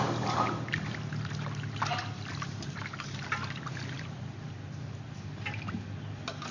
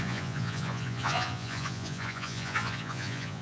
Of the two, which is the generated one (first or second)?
second